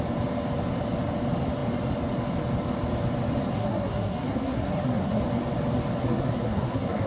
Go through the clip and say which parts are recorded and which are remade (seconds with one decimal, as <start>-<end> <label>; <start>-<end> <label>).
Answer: 0.0-3.5 recorded; 3.5-5.2 remade; 5.2-6.0 recorded; 6.0-7.1 remade